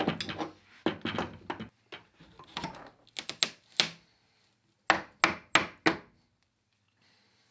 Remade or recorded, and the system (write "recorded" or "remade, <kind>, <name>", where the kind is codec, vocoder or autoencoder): recorded